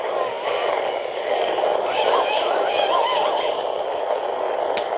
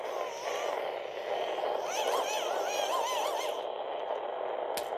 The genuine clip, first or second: second